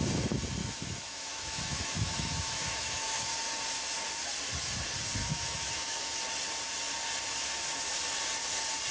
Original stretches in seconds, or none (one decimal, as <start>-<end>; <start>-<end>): 0.0-0.6; 3.3-5.2; 6.2-8.9